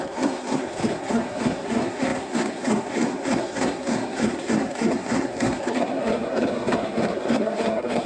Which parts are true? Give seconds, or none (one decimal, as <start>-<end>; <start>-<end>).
none